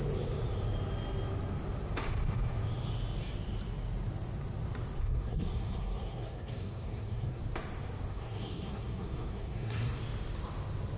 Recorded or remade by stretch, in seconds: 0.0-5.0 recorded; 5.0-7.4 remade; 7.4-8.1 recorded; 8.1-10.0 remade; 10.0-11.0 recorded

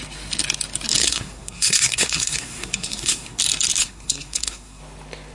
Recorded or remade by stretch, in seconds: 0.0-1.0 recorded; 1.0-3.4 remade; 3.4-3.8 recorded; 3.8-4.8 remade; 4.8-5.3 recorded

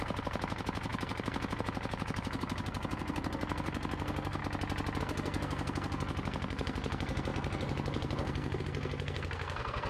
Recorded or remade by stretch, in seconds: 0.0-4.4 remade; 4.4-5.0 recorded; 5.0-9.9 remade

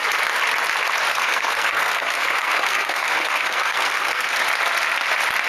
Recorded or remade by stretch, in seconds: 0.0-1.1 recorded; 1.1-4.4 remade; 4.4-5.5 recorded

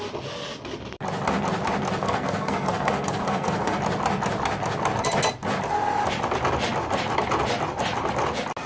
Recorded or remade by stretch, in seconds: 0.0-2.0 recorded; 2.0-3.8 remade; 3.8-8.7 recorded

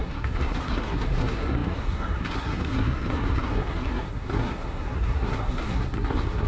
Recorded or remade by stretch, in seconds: 0.0-6.5 remade

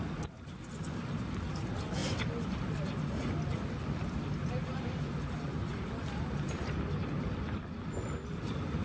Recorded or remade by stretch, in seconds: 0.0-8.8 recorded

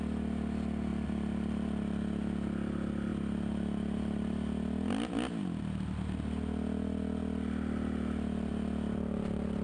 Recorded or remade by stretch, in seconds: 0.0-9.6 recorded